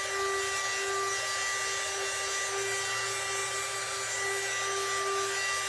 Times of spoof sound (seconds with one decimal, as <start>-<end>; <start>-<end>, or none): 3.4-4.1